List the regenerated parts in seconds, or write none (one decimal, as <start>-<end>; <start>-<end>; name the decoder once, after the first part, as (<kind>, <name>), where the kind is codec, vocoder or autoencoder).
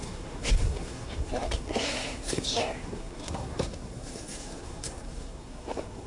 0.0-6.1 (codec, SNAC)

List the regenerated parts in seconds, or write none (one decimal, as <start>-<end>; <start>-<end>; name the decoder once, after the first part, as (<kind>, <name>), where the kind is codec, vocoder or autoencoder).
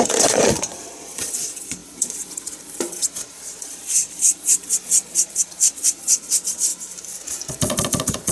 0.0-6.7 (vocoder, Vocos); 7.5-8.3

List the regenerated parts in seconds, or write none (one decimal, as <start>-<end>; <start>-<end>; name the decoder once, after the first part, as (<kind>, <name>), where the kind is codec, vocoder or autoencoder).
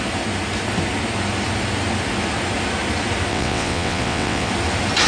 3.3-4.5 (vocoder, WaveNeXt)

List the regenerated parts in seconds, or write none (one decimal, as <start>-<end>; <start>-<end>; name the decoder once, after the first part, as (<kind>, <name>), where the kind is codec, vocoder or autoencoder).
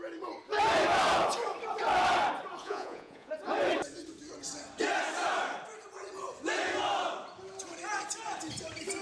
2.6-3.3 (vocoder, Vocos)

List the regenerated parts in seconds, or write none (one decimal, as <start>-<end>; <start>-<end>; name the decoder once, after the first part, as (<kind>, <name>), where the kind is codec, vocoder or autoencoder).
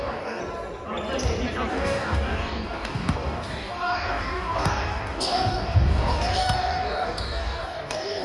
0.0-0.4 (codec, DAC); 1.7-8.2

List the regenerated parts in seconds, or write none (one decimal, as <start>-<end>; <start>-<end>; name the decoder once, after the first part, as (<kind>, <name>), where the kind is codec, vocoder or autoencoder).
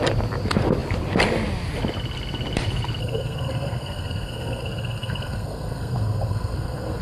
3.0-7.0 (codec, SNAC)